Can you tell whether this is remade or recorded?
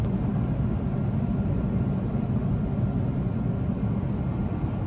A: recorded